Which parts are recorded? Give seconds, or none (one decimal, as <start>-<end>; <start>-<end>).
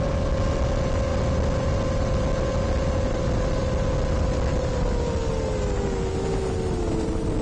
0.0-7.4